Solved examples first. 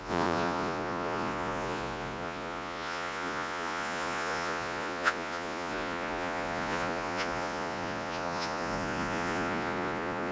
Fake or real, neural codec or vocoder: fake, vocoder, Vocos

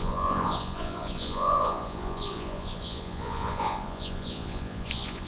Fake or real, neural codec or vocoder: fake, vocoder, Vocos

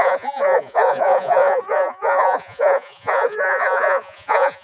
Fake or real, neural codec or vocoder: fake, vocoder, Vocos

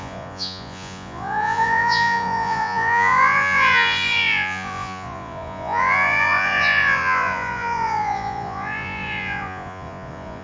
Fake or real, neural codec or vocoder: fake, vocoder, Vocos